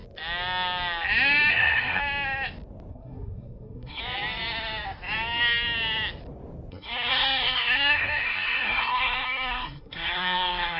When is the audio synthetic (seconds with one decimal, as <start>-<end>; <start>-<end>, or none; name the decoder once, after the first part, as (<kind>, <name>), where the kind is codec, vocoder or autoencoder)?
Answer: 1.5-2.0 (codec, SNAC); 2.9-4.0; 6.7-10.8